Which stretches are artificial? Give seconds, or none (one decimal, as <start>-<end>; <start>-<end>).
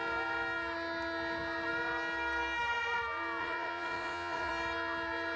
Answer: 3.4-4.5